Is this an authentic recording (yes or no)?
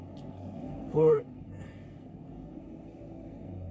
no